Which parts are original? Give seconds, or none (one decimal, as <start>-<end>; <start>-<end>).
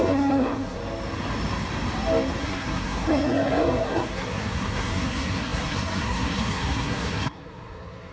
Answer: 0.8-2.4